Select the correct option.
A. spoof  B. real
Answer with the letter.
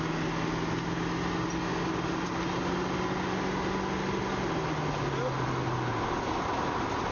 B